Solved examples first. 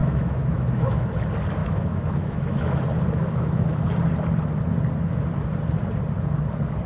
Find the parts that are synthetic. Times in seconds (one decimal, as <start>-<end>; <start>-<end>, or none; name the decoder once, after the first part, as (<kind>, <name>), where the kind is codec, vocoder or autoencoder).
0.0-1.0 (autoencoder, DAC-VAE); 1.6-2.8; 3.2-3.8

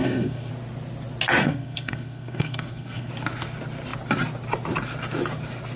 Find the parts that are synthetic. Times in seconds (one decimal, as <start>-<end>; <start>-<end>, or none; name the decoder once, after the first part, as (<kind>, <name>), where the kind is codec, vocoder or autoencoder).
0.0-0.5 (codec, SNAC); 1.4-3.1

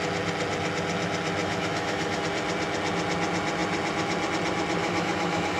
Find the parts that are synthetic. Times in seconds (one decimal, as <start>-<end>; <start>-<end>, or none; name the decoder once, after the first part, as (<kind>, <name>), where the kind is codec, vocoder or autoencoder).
1.4-2.2 (autoencoder, DAC-VAE); 4.8-5.6

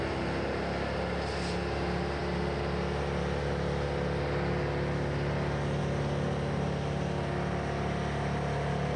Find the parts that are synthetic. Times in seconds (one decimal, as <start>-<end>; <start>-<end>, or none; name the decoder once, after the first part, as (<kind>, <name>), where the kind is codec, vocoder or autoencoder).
none

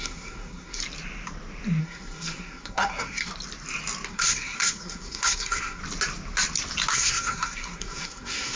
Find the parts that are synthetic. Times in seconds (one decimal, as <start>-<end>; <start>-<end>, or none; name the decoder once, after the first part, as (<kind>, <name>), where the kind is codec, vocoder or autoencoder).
0.0-0.8 (codec, SNAC); 1.8-3.3; 4.1-5.8; 6.9-8.6

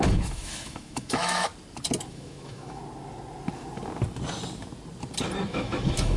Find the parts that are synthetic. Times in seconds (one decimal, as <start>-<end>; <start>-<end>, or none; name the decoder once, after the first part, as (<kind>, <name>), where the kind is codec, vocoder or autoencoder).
0.0-1.5 (autoencoder, DAC-VAE); 2.1-2.8; 5.5-6.2